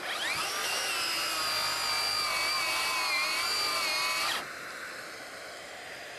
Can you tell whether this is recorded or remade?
recorded